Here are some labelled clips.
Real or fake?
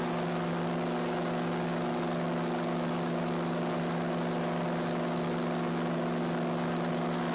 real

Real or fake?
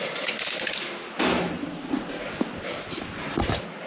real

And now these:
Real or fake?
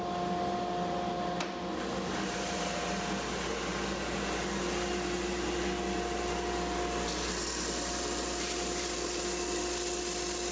real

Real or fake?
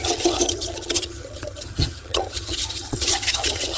fake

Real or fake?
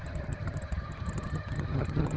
fake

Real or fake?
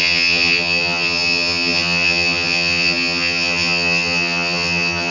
fake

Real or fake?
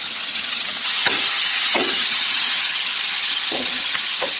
fake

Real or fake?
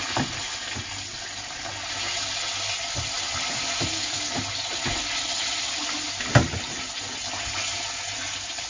real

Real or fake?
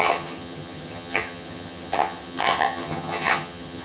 fake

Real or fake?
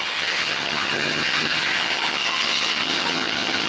fake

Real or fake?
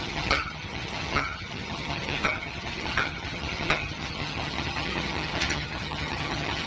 fake